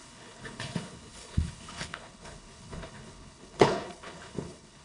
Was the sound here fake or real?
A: fake